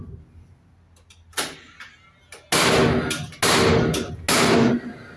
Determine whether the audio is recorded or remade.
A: recorded